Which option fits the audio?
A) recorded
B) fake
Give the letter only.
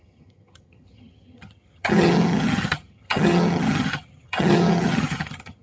B